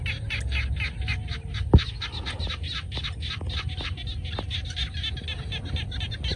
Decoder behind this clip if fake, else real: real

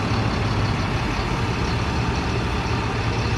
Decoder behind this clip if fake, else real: real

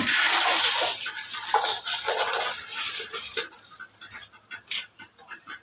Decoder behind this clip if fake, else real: real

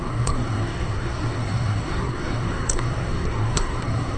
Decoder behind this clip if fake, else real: fake, codec, SNAC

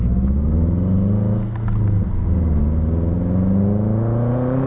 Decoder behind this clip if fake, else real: real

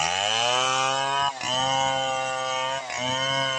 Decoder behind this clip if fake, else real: real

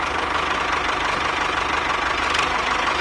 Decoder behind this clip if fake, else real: real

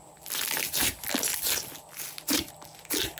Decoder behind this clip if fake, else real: real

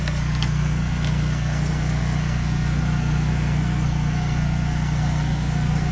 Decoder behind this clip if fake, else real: fake, codec, SNAC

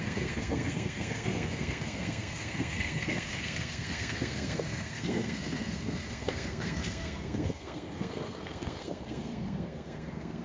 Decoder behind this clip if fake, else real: fake, codec, SNAC